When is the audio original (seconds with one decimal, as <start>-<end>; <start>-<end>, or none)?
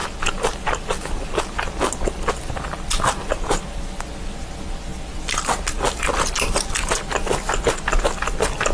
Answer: 0.0-8.7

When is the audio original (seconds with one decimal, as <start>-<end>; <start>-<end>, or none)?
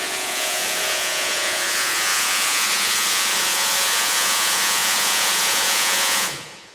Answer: none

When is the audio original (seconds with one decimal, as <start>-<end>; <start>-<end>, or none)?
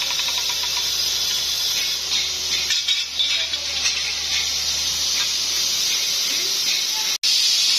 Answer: 0.0-7.8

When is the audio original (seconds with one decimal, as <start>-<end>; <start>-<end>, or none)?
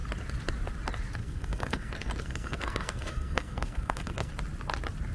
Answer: 0.0-1.2; 4.3-5.1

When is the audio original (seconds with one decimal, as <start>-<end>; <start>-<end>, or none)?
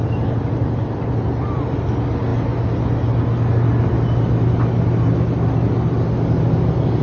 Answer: 0.0-7.0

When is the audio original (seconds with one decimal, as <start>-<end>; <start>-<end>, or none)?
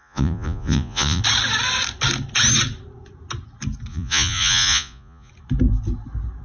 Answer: 1.2-3.9; 5.3-6.4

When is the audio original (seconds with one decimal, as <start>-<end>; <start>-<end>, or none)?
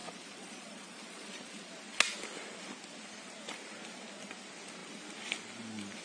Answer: 1.7-6.0